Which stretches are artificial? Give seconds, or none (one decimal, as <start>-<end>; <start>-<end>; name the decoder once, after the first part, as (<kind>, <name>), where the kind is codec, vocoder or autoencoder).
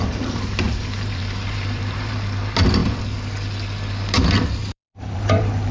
0.0-2.8 (vocoder, BigVGAN v2); 4.6-5.7